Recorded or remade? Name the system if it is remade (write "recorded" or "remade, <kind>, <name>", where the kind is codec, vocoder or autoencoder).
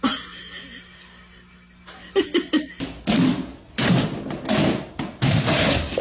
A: recorded